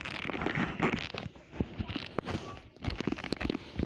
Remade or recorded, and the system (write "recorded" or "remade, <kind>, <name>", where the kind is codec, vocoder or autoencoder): remade, vocoder, BigVGAN v2